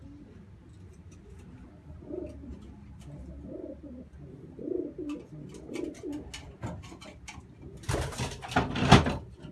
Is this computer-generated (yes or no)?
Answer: no